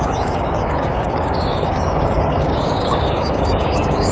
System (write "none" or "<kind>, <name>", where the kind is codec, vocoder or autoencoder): codec, DAC